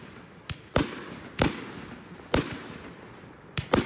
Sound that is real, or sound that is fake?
real